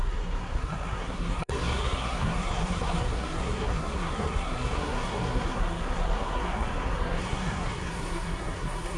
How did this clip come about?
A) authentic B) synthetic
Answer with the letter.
B